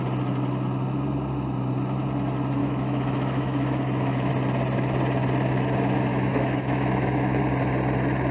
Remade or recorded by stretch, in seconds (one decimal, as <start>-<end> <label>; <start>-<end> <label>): 0.0-2.6 recorded; 2.6-4.3 remade; 4.3-6.1 recorded; 6.1-7.4 remade; 7.4-8.3 recorded